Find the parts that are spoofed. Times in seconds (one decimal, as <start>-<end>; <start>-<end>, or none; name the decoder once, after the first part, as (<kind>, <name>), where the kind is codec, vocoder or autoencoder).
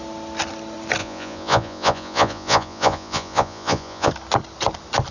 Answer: 1.0-4.1 (vocoder, Vocos)